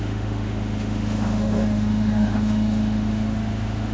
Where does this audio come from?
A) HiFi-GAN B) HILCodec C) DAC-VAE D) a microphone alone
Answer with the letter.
C